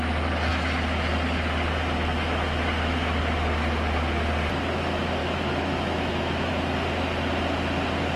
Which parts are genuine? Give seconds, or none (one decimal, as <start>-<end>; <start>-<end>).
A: 0.0-5.2; 6.5-8.2

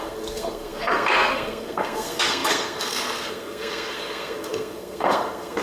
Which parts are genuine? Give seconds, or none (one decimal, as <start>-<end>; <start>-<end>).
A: none